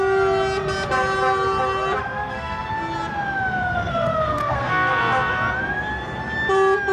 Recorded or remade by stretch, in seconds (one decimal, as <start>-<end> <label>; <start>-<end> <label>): 0.0-2.0 recorded; 2.0-2.7 remade; 2.7-3.6 recorded; 3.6-5.0 remade; 5.0-6.9 recorded